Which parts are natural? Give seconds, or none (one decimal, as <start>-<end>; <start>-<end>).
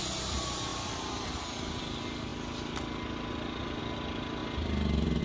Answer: 0.0-0.7; 1.8-4.4